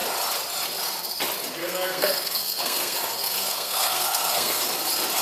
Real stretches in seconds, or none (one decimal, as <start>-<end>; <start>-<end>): 0.0-1.6; 4.7-5.2